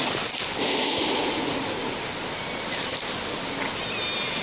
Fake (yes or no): no